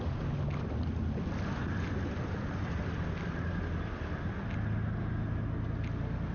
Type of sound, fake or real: real